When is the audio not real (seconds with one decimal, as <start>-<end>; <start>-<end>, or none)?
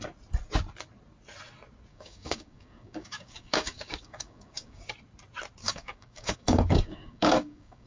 1.9-4.8; 5.6-7.9